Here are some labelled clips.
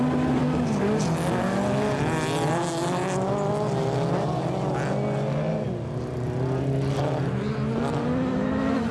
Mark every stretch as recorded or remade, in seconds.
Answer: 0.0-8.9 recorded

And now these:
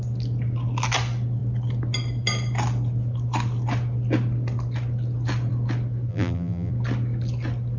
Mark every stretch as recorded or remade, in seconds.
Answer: 0.0-6.1 recorded; 6.1-6.7 remade; 6.7-7.8 recorded

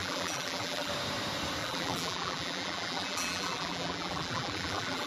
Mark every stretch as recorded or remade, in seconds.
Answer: 0.0-0.9 remade; 0.9-1.6 recorded; 1.6-5.1 remade

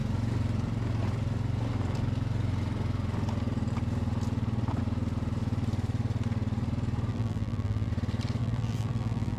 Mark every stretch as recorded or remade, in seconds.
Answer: 0.0-7.1 recorded; 7.1-7.9 remade; 7.9-8.4 recorded; 8.4-9.4 remade

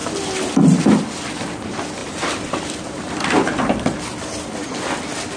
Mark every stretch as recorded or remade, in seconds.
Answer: 0.0-2.0 recorded; 2.0-4.7 remade; 4.7-5.4 recorded

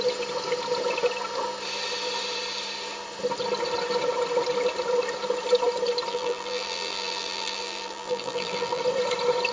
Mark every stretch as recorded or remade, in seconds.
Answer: 0.0-6.1 recorded; 6.1-8.8 remade; 8.8-9.5 recorded

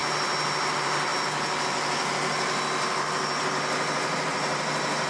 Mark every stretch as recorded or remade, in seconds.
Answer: 0.0-0.7 recorded; 0.7-1.1 remade; 1.1-4.2 recorded; 4.2-5.1 remade

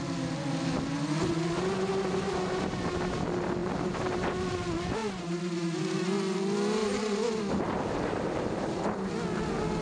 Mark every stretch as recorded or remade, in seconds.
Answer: 0.0-3.6 recorded; 3.6-4.4 remade; 4.4-5.0 recorded; 5.0-5.8 remade; 5.8-6.8 recorded; 6.8-9.1 remade; 9.1-9.8 recorded